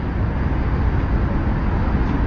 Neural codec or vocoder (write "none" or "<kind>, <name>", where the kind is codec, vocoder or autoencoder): none